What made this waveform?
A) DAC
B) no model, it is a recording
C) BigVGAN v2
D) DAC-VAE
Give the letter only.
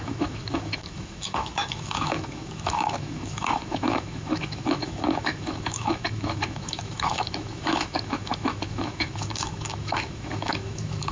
D